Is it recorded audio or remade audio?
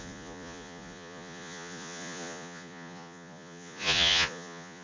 remade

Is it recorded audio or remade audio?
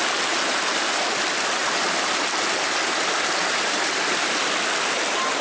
recorded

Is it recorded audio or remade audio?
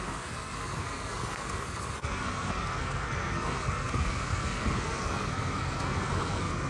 remade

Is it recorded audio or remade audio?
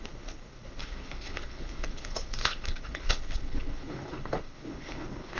remade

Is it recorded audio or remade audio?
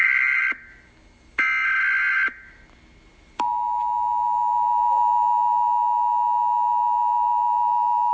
recorded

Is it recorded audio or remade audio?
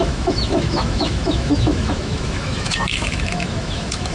remade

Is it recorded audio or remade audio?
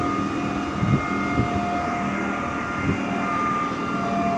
recorded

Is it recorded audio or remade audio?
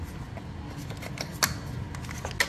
recorded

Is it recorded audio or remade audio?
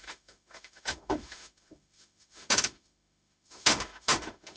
remade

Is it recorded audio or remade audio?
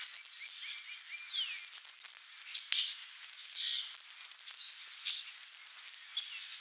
recorded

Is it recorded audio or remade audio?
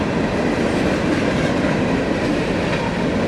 recorded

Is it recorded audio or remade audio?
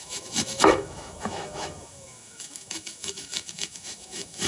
remade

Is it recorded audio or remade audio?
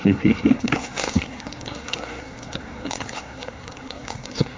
remade